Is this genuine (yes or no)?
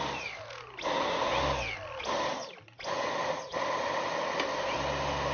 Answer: yes